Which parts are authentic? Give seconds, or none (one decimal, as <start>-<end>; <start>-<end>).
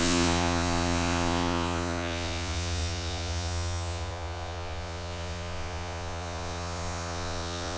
none